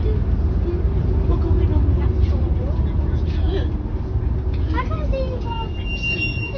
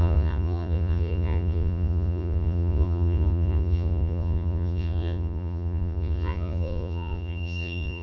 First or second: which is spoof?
second